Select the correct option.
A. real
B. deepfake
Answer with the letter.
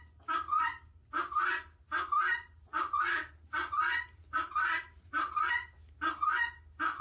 A